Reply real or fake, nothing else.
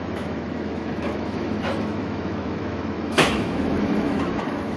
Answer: fake